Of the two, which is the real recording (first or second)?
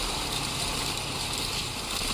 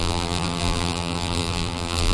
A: first